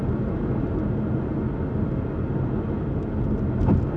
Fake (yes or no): no